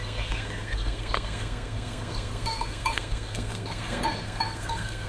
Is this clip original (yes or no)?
no